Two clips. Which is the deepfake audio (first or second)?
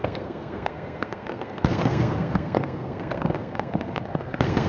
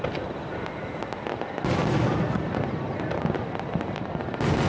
first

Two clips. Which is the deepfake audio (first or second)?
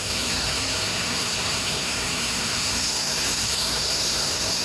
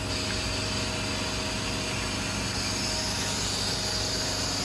first